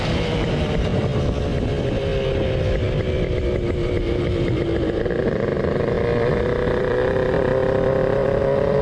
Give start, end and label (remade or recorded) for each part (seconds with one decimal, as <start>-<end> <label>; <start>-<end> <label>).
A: 0.0-1.0 remade; 1.0-4.0 recorded; 4.0-5.5 remade; 5.5-6.8 recorded; 6.8-7.5 remade; 7.5-8.0 recorded; 8.0-8.8 remade